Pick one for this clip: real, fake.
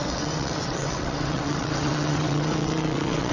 fake